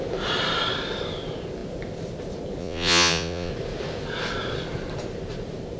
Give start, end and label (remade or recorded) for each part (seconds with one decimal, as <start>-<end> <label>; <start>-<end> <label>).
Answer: 0.0-2.6 recorded; 2.6-3.5 remade; 3.5-5.8 recorded